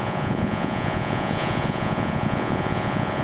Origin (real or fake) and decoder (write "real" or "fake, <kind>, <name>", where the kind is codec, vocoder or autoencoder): fake, vocoder, Vocos